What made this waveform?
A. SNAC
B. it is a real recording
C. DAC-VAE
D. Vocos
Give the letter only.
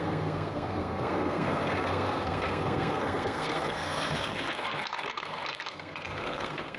A